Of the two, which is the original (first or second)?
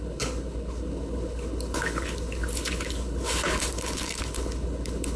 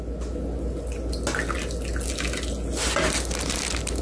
second